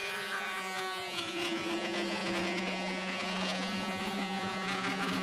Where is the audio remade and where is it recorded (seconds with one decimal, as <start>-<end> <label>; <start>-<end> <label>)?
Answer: 0.0-5.2 remade